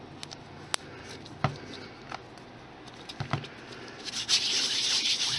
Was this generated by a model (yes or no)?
no